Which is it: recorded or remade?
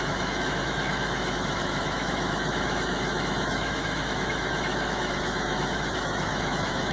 remade